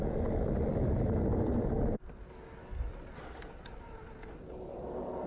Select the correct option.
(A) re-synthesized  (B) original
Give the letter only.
B